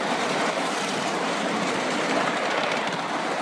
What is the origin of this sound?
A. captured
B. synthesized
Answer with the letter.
B